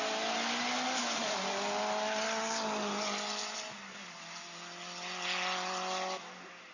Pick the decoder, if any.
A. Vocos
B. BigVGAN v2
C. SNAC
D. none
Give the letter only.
D